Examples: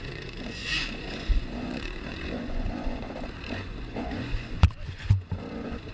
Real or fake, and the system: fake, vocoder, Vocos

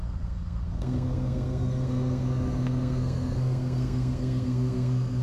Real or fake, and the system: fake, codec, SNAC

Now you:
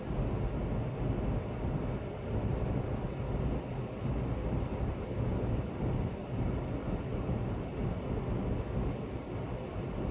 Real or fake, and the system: real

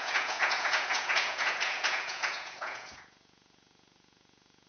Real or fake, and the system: fake, vocoder, Vocos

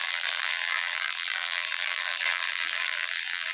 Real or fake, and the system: fake, vocoder, BigVGAN v2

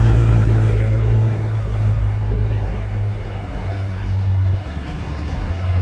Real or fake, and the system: fake, codec, SNAC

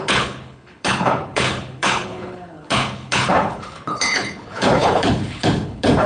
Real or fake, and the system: fake, codec, HILCodec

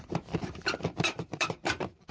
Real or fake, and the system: fake, vocoder, BigVGAN v2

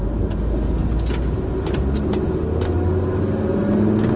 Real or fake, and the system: real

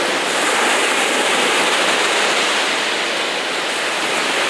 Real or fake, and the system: real